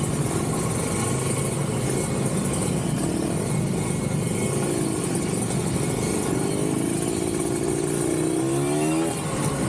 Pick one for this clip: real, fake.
real